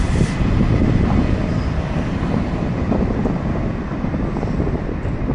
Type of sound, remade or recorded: recorded